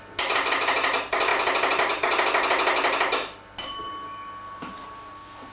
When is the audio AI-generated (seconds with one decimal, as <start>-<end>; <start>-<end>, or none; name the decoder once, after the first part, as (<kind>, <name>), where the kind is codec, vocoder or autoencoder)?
none